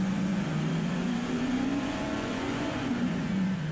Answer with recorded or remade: remade